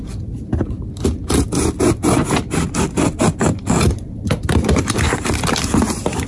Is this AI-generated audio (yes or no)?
no